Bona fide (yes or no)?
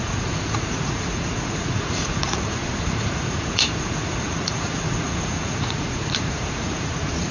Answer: no